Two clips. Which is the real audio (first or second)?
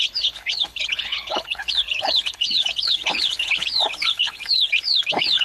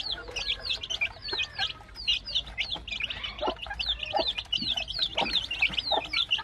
second